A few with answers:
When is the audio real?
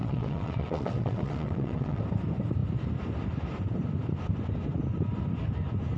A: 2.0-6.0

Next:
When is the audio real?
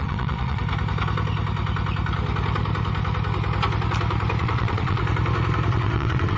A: 0.6-4.4; 5.0-5.7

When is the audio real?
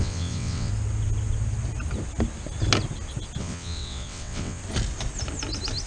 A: 0.7-3.4; 4.6-5.9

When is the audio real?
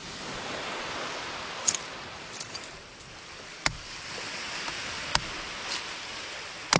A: 0.0-6.8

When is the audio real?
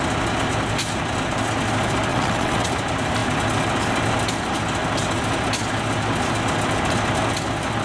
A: 0.0-2.1; 2.7-7.8